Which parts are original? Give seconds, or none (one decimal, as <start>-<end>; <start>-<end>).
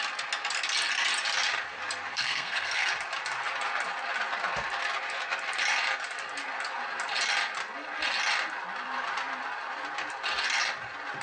0.0-2.1; 2.9-11.2